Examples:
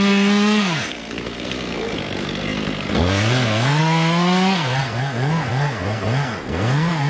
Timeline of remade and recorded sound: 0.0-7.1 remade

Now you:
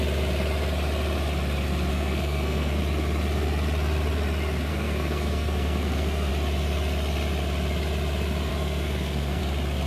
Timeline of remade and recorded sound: 0.0-1.9 recorded; 1.9-2.8 remade; 2.8-4.7 recorded; 4.7-6.3 remade; 6.3-8.5 recorded; 8.5-9.4 remade; 9.4-9.9 recorded

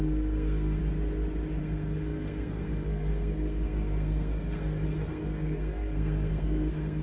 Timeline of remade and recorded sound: 0.0-0.8 remade; 0.8-1.6 recorded; 1.6-7.0 remade

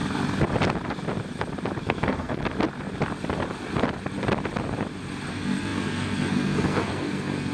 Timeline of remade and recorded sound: 0.0-1.8 recorded; 1.8-2.4 remade; 2.4-5.3 recorded; 5.3-7.5 remade

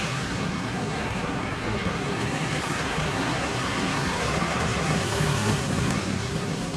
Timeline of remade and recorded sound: 0.0-6.8 remade

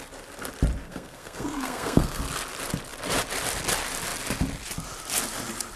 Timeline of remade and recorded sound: 0.0-0.8 recorded; 0.8-2.2 remade; 2.2-5.8 recorded

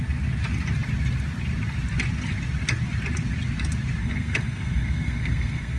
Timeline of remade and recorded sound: 0.0-4.0 recorded; 4.0-5.8 remade